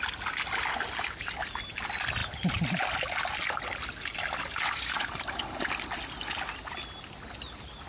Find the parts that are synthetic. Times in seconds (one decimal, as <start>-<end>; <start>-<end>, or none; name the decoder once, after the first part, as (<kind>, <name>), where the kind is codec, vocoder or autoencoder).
none